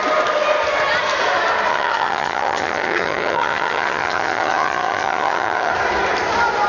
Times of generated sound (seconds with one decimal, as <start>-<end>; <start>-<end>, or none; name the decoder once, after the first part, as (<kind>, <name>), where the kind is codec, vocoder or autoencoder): 1.7-5.7 (vocoder, HiFi-GAN)